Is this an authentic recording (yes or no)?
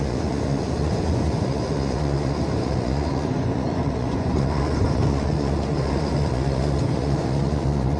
no